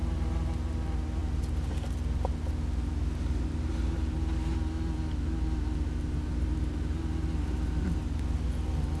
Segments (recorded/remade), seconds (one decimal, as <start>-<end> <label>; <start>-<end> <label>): 0.0-9.0 recorded